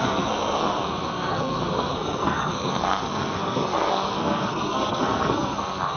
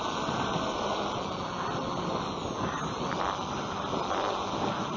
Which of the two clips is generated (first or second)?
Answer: first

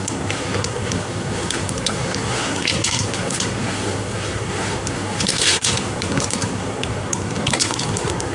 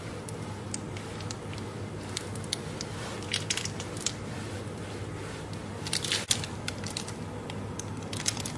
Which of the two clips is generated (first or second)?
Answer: first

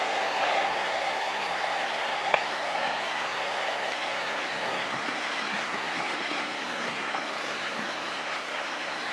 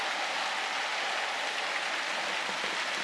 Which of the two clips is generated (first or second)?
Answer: first